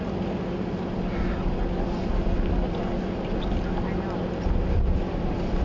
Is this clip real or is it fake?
real